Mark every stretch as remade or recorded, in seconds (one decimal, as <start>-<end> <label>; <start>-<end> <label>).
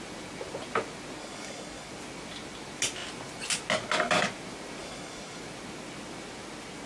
0.0-1.2 recorded; 1.2-1.9 remade; 1.9-4.8 recorded; 4.8-5.4 remade; 5.4-6.9 recorded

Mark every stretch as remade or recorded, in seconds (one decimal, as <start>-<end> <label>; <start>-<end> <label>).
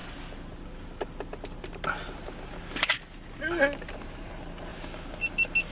0.0-5.7 recorded